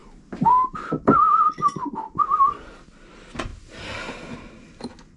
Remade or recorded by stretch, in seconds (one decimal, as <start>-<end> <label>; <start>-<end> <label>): 0.0-5.2 recorded